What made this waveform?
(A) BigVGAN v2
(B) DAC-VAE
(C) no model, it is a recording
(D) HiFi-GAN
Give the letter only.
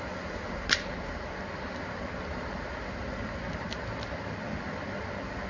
C